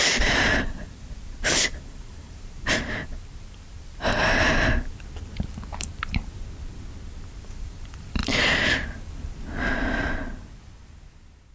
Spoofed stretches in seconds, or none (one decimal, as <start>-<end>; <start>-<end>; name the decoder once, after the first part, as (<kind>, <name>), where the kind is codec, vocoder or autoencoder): 0.0-3.0 (vocoder, BigVGAN v2); 7.3-8.2